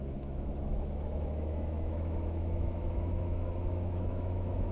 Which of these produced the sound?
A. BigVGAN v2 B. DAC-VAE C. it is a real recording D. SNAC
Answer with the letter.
B